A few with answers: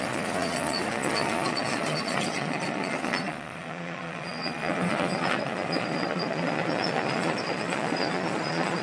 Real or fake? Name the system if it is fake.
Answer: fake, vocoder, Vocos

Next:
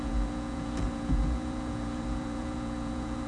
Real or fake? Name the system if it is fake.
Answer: fake, vocoder, Vocos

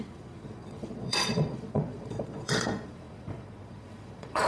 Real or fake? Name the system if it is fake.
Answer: fake, vocoder, Vocos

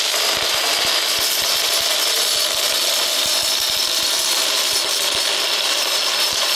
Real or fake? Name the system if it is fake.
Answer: real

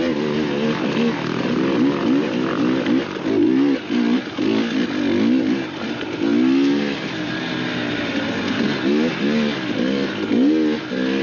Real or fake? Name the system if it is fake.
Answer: real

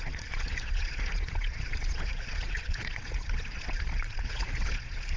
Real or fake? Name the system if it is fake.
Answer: fake, vocoder, Vocos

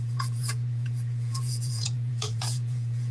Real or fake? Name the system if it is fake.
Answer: fake, vocoder, Vocos